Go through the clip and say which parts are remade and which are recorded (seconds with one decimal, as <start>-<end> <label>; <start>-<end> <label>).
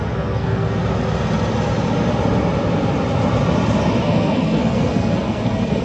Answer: 0.0-0.8 remade; 0.8-4.0 recorded; 4.0-5.8 remade